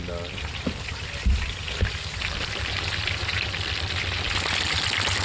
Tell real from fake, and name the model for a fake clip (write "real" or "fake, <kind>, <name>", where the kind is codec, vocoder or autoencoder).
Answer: real